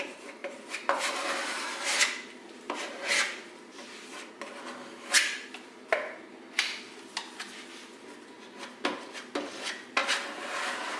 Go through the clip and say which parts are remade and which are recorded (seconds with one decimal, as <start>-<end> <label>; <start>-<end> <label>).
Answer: 0.0-0.4 recorded; 0.4-4.3 remade; 4.3-11.0 recorded